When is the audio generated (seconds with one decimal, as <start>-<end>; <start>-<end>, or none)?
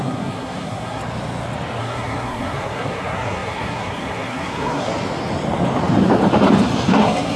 0.0-1.0; 1.8-4.9; 6.9-7.4